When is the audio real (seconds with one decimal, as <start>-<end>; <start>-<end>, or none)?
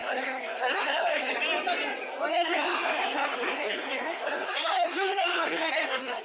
1.3-2.3